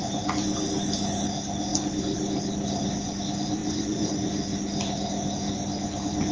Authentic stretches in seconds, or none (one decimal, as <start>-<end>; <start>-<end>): 0.0-3.6; 4.1-6.3